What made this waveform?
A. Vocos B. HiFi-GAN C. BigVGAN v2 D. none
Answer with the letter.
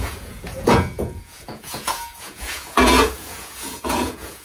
A